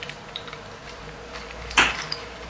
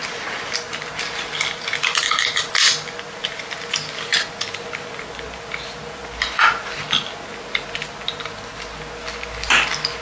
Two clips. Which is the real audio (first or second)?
second